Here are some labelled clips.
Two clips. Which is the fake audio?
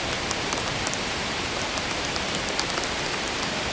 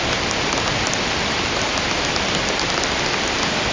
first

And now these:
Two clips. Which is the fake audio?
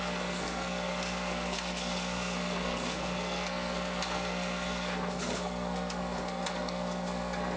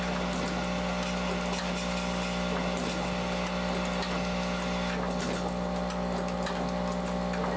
first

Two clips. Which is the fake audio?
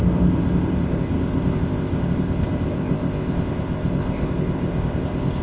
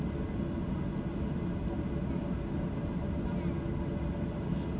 first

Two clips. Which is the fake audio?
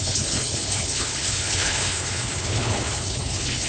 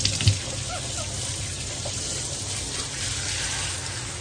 first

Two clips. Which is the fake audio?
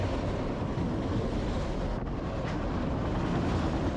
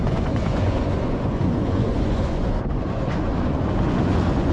second